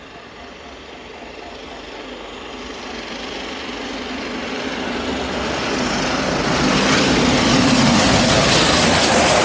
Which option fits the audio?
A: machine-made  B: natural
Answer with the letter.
B